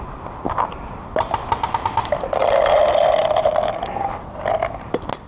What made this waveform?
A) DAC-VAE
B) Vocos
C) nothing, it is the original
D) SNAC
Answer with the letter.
C